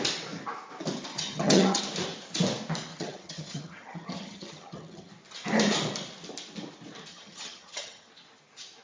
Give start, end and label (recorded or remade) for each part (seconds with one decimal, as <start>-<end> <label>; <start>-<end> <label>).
0.0-1.1 recorded; 1.1-1.8 remade; 1.8-2.9 recorded; 2.9-5.1 remade; 5.1-7.1 recorded; 7.1-8.1 remade; 8.1-8.8 recorded